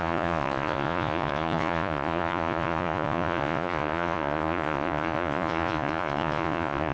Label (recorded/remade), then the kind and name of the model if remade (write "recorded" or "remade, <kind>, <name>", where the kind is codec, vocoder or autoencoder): remade, vocoder, Vocos